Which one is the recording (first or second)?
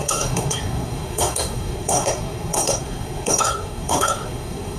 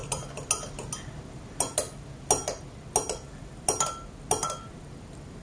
second